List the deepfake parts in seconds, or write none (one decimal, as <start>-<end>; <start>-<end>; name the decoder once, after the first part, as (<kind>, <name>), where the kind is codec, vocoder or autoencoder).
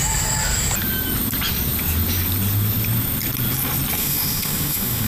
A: 4.0-5.1 (autoencoder, DAC-VAE)